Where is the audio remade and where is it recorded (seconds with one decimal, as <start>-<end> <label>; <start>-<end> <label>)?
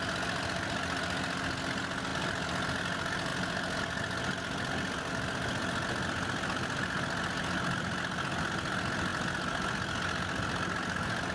0.0-11.3 recorded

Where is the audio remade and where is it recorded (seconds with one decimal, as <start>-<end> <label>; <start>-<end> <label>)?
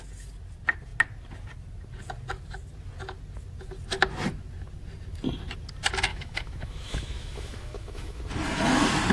0.0-6.1 recorded; 6.1-8.2 remade; 8.2-9.1 recorded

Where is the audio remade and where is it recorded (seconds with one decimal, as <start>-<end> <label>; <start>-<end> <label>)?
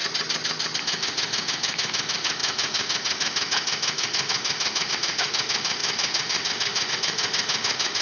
0.0-0.8 recorded; 0.8-8.0 remade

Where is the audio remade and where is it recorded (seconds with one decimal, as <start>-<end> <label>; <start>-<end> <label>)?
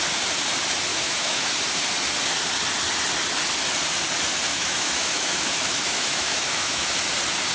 0.0-0.9 recorded; 0.9-1.5 remade; 1.5-4.5 recorded; 4.5-6.9 remade; 6.9-7.5 recorded